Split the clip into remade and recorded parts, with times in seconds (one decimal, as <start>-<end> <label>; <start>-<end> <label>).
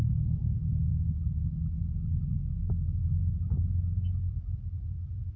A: 0.0-5.4 recorded